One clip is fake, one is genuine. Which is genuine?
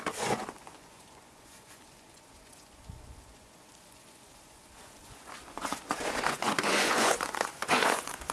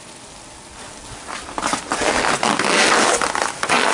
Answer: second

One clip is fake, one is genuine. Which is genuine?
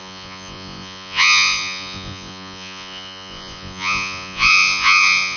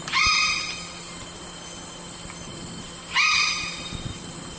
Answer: second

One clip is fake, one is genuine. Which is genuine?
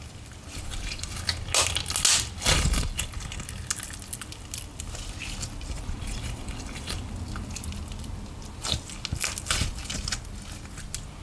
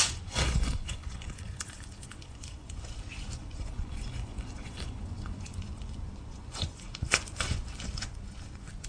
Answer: first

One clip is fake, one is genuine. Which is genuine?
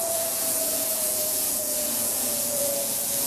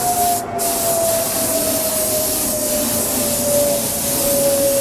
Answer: second